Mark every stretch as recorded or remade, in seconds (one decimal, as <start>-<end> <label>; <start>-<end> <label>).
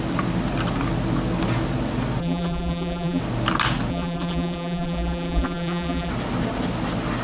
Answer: 0.0-2.2 recorded; 2.2-3.2 remade; 3.2-3.9 recorded; 3.9-6.1 remade; 6.1-7.2 recorded